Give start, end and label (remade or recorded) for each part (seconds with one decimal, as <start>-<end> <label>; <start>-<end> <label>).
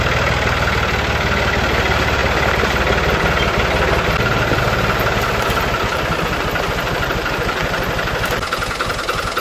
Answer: 0.0-7.6 recorded; 7.6-8.1 remade; 8.1-9.4 recorded